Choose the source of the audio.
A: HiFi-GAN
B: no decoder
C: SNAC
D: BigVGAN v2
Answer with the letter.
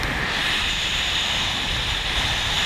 D